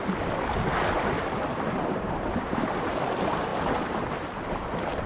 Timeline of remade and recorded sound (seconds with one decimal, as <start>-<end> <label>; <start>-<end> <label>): 0.0-1.5 recorded; 1.5-2.9 remade; 2.9-5.1 recorded